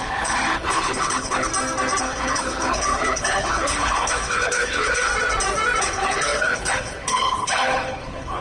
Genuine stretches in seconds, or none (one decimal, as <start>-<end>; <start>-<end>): 1.5-2.0; 5.1-5.8